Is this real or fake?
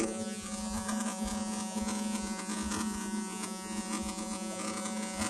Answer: fake